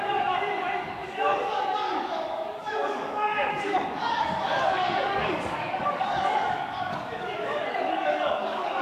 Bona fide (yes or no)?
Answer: no